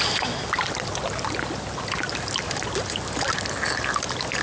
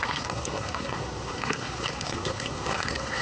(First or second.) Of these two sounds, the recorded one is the first